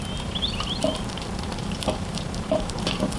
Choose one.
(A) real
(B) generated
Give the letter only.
A